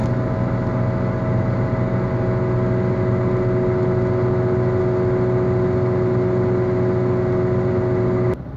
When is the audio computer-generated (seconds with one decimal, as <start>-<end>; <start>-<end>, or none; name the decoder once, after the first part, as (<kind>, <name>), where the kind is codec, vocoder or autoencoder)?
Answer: none